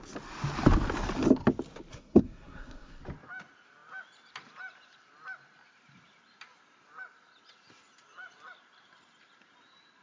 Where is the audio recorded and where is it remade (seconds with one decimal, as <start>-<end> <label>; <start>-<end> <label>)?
0.0-1.9 recorded; 1.9-3.0 remade; 3.0-10.0 recorded